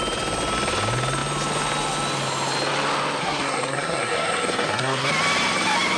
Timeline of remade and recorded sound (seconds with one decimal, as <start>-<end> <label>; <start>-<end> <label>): 0.0-3.2 recorded; 3.2-5.1 remade; 5.1-6.0 recorded